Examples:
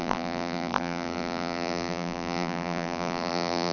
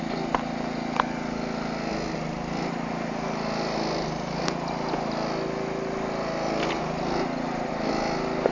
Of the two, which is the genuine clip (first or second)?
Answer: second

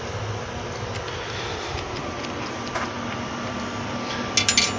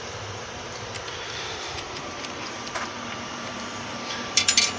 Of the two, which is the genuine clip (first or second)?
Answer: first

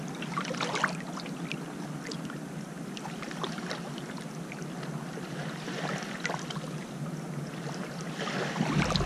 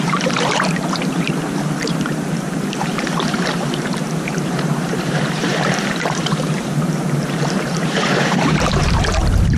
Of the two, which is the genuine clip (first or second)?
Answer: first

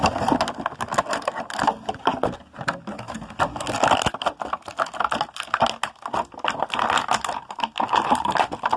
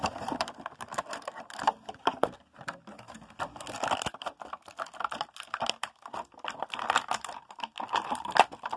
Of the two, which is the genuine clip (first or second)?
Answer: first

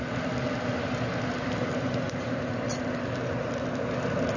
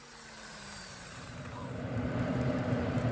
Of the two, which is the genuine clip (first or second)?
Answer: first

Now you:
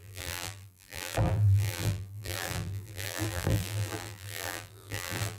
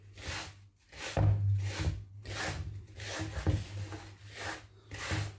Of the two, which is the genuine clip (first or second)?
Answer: second